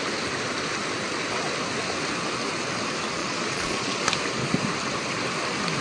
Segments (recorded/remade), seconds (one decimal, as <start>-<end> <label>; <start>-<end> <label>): 0.0-3.2 recorded; 3.2-4.0 remade; 4.0-5.8 recorded

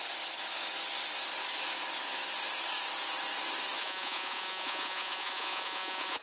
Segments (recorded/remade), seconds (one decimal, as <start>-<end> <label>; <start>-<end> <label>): 0.0-3.8 recorded; 3.8-6.2 remade

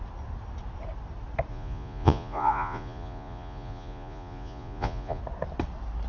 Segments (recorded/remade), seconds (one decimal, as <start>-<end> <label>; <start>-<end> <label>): 0.0-1.5 recorded; 1.5-5.2 remade; 5.2-6.1 recorded

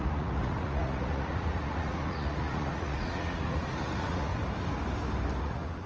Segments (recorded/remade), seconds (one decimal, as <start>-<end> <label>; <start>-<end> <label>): 0.0-4.3 remade; 4.3-5.4 recorded; 5.4-5.9 remade

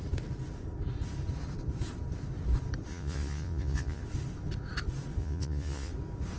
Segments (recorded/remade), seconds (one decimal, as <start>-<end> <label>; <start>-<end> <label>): 0.0-2.9 recorded; 2.9-4.0 remade; 4.0-5.2 recorded; 5.2-5.9 remade; 5.9-6.4 recorded